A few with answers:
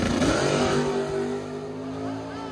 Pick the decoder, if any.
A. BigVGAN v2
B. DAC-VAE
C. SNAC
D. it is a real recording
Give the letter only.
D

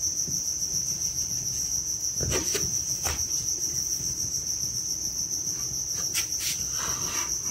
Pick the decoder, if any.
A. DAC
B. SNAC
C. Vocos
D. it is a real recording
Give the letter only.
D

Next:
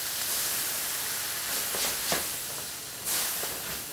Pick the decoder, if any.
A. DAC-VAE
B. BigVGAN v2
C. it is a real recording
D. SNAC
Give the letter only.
C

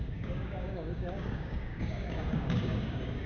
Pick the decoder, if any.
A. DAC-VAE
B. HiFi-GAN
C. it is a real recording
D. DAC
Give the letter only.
D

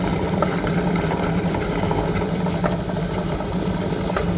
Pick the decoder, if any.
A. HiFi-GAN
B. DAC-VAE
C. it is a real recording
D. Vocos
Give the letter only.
C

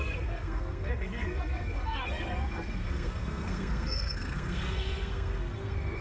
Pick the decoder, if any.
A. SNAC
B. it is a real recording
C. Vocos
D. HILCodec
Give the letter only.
A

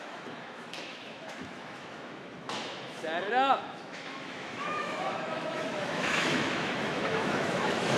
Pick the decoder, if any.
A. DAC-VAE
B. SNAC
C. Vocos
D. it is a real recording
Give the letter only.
A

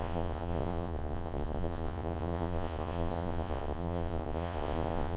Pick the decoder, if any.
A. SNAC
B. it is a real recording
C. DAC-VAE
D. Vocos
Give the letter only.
D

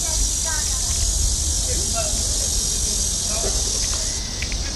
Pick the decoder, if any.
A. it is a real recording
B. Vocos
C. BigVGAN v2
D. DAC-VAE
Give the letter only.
A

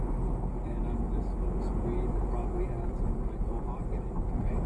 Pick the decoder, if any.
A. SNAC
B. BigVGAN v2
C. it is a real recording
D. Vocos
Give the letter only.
C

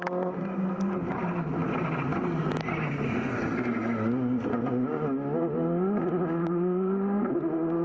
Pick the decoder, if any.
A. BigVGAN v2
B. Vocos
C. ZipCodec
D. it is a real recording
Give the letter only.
D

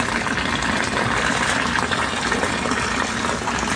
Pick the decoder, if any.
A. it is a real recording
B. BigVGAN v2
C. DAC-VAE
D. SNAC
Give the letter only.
A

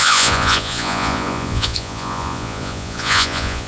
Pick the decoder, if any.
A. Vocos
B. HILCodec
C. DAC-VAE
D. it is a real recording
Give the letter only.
A